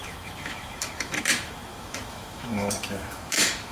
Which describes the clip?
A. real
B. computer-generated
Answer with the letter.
B